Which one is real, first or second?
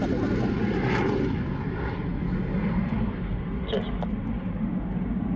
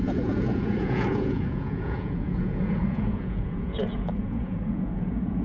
first